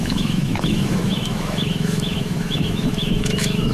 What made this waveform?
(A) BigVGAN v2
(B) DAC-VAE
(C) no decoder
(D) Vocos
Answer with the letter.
B